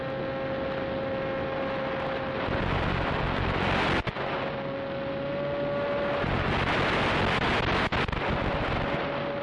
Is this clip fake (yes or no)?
no